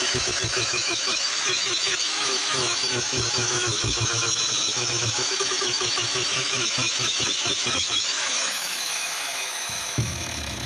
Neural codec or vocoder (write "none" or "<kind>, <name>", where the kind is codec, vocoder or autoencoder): autoencoder, DAC-VAE